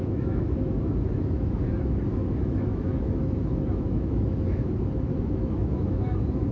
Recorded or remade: remade